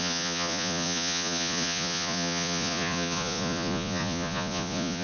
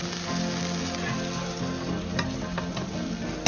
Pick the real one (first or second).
second